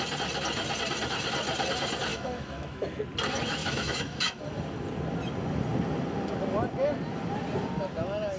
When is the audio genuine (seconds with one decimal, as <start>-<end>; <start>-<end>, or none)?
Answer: 0.0-2.1; 3.0-3.6; 4.4-8.4